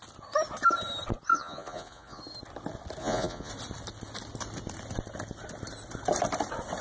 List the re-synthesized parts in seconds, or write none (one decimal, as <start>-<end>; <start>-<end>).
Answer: 1.3-2.2; 3.0-3.5